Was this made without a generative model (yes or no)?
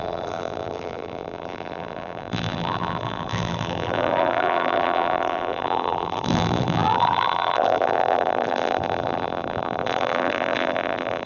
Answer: no